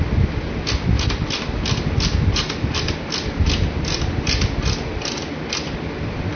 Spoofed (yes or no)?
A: no